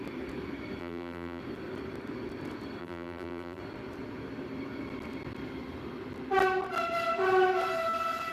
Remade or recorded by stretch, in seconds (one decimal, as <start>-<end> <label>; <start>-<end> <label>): 0.0-0.8 recorded; 0.8-1.4 remade; 1.4-2.8 recorded; 2.8-3.6 remade; 3.6-8.3 recorded